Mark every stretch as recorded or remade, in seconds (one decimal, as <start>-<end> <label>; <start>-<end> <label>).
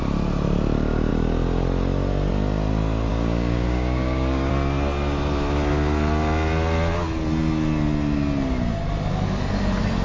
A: 0.0-3.1 recorded; 3.1-4.5 remade; 4.5-10.0 recorded